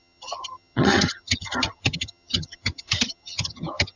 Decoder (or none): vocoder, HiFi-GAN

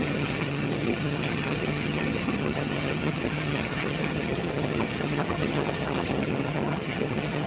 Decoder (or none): vocoder, HiFi-GAN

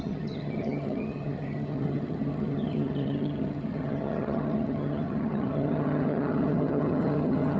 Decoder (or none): vocoder, HiFi-GAN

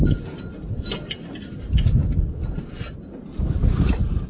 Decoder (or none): none